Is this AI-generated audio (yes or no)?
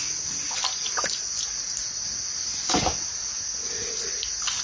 no